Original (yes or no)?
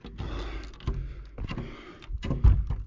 yes